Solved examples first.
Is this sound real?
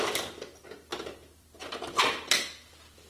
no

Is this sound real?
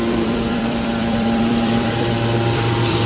no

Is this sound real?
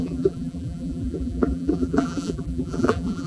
no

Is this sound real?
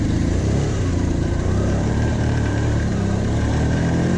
no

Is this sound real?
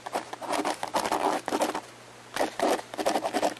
yes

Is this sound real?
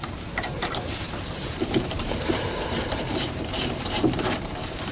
no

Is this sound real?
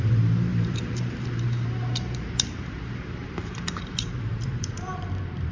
no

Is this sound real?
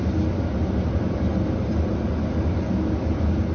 yes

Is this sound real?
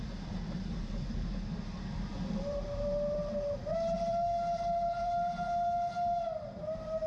no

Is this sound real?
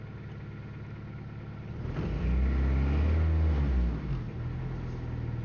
yes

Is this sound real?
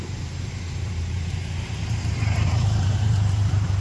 no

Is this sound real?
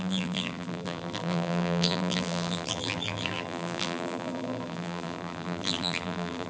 no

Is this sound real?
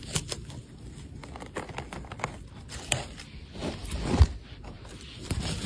no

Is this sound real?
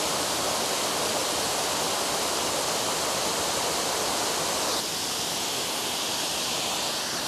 yes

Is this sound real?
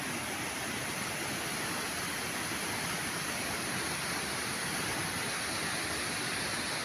yes